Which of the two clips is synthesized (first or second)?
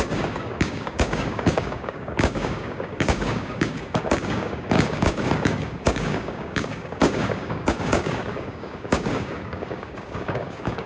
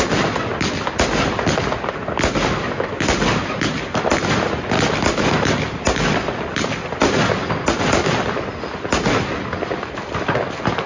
first